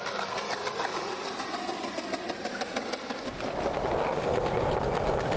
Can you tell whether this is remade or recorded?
recorded